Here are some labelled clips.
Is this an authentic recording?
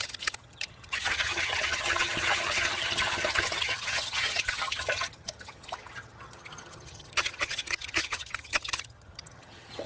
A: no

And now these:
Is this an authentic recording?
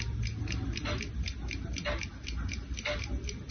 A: yes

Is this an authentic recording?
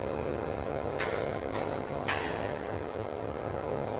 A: no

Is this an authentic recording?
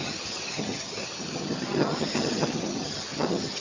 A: no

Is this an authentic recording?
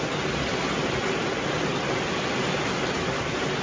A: yes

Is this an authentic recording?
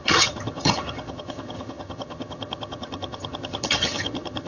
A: no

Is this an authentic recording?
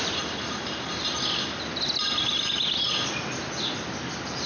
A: yes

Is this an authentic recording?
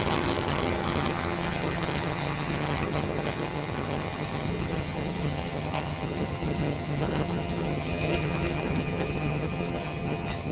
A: no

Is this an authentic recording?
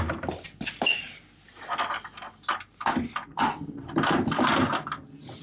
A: yes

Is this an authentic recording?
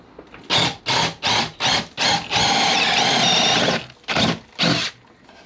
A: yes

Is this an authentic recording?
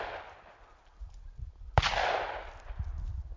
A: yes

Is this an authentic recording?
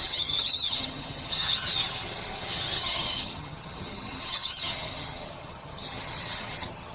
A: no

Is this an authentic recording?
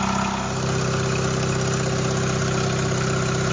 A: yes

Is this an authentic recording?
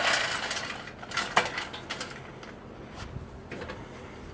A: yes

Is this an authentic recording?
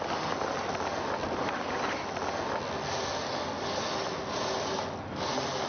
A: yes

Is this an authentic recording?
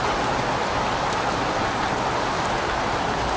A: yes